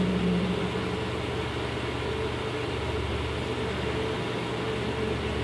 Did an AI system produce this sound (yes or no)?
no